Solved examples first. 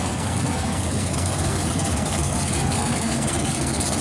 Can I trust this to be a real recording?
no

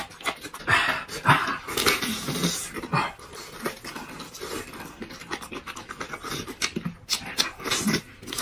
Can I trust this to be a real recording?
yes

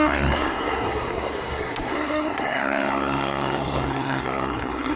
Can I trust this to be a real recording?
no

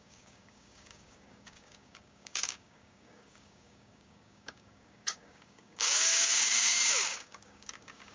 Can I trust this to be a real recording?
no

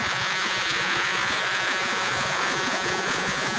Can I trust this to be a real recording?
no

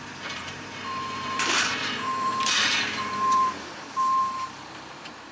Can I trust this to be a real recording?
no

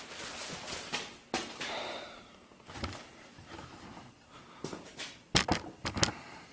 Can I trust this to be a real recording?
yes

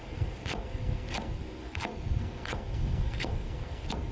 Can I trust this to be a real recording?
no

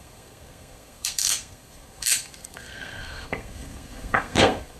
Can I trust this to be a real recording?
no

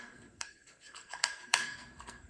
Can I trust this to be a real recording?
no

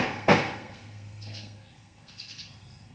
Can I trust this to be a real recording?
no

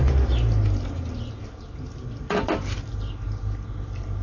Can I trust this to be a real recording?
yes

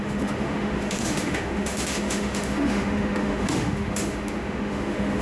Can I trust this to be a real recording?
no